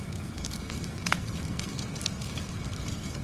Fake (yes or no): yes